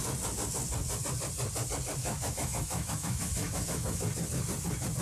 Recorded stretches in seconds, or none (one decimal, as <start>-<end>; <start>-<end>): 0.0-2.0; 4.1-5.0